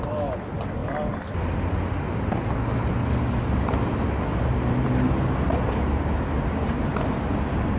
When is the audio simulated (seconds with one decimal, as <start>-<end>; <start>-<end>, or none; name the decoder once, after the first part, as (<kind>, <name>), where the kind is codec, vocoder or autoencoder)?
6.9-7.8 (vocoder, BigVGAN v2)